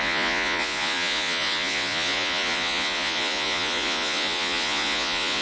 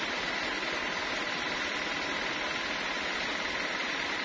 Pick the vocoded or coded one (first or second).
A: first